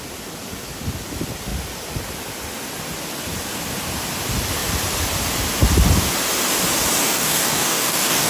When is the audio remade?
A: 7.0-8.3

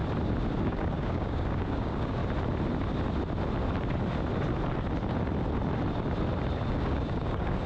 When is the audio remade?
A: 0.6-2.2; 6.7-7.7